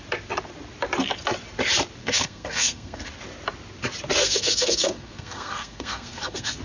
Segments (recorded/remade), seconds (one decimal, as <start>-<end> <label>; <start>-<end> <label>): 0.0-2.0 recorded; 2.0-3.1 remade; 3.1-4.2 recorded; 4.2-6.6 remade